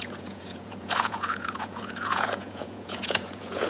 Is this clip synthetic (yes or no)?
yes